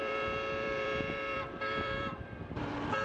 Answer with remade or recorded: remade